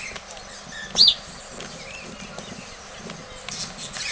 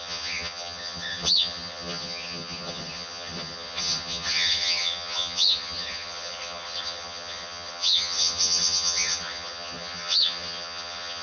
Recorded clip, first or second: first